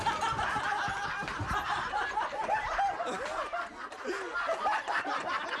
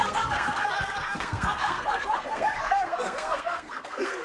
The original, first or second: first